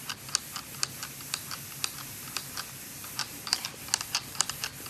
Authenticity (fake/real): real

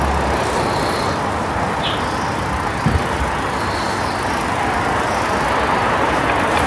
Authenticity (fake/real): real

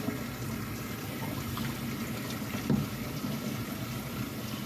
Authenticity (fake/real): real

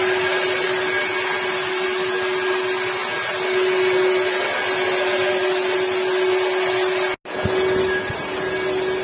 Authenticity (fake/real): real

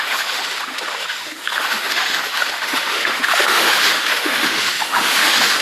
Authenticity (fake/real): fake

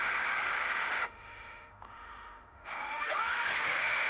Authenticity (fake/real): fake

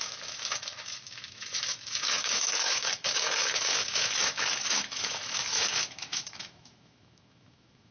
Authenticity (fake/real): fake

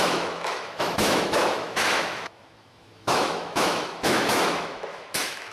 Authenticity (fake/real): fake